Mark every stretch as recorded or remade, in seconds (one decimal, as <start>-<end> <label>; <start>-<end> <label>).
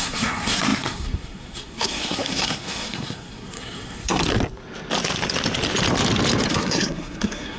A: 0.0-4.2 remade; 4.2-6.5 recorded; 6.5-7.6 remade